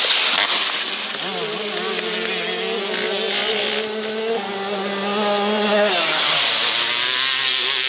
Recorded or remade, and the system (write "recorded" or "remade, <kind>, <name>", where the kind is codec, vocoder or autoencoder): recorded